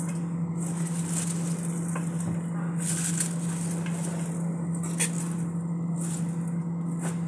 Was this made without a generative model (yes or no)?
yes